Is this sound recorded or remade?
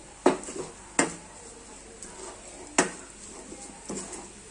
recorded